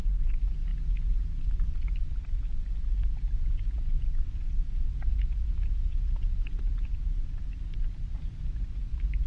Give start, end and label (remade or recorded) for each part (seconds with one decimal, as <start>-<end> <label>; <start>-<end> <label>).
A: 0.0-5.1 recorded; 5.1-6.9 remade; 6.9-9.3 recorded